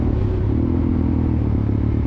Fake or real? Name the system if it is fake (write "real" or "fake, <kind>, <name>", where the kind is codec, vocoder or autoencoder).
real